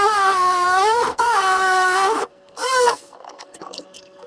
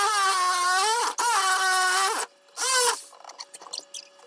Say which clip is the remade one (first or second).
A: first